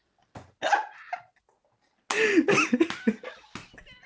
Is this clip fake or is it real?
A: real